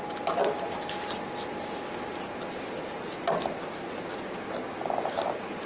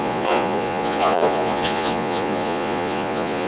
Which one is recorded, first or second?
first